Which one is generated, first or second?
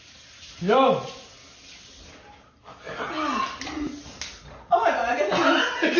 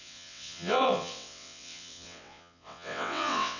second